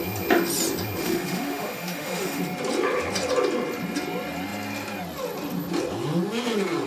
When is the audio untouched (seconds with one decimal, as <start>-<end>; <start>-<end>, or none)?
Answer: 0.0-1.0; 2.4-6.9